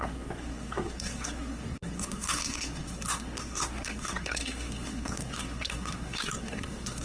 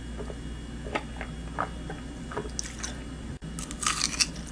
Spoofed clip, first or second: first